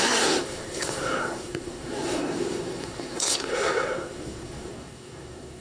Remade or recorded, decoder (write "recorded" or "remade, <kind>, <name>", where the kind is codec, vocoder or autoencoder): remade, codec, SNAC